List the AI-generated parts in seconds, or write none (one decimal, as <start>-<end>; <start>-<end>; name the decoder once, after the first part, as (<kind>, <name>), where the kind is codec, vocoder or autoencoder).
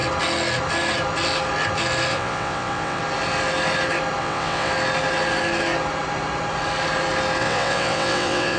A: 2.1-3.0 (vocoder, WaveNeXt); 4.2-4.7; 7.4-8.6